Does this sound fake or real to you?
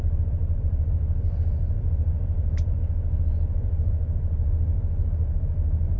fake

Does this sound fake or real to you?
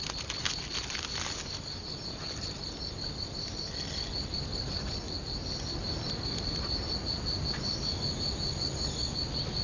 real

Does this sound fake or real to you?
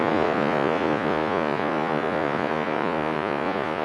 fake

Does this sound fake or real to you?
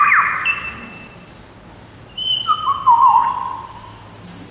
real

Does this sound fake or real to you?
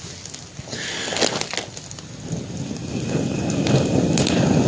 real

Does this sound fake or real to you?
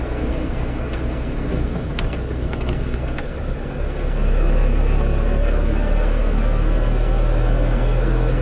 fake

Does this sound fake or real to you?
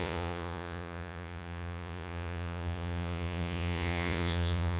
fake